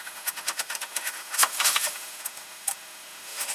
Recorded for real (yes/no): no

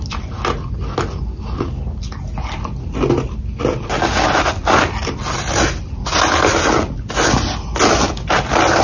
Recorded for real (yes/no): yes